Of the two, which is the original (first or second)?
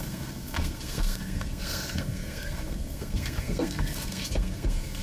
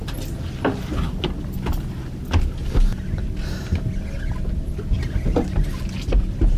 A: second